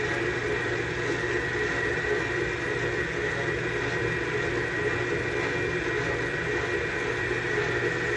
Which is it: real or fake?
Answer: real